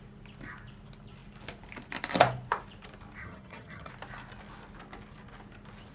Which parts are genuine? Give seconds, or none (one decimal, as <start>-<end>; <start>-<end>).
0.0-3.2; 3.9-5.9